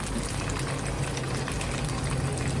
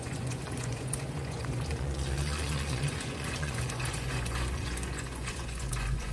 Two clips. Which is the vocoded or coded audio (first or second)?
second